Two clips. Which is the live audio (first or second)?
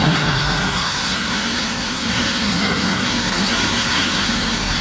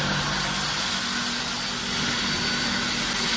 second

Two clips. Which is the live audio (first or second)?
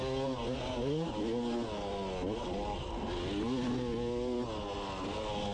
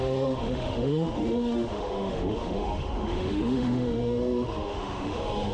first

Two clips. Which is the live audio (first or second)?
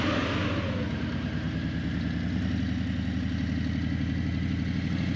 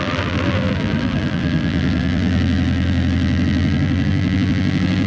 first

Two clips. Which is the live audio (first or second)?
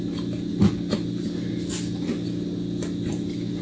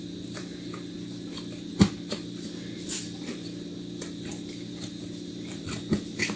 first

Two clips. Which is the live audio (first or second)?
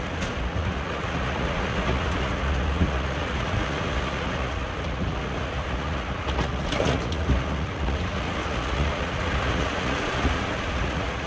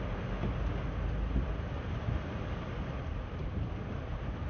second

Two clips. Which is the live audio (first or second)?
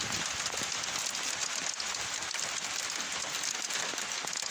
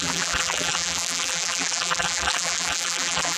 first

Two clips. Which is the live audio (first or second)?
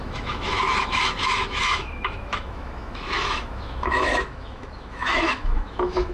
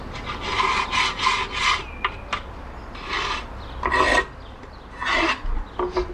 second